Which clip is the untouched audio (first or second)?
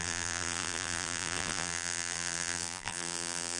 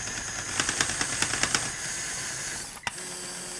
second